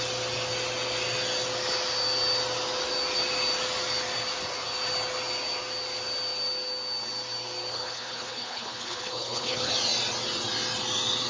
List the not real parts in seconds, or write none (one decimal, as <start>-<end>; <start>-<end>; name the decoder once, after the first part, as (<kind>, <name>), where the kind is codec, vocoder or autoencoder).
7.7-9.7 (codec, HILCodec)